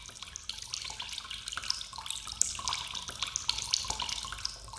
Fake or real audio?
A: real